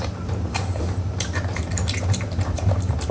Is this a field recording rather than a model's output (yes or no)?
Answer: no